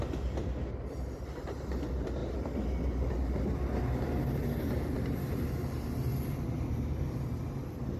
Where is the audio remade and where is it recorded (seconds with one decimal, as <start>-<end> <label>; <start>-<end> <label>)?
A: 0.0-8.0 recorded